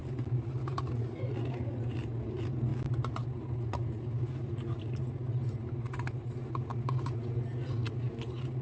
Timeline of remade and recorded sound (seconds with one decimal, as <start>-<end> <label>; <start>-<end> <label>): 0.0-8.6 recorded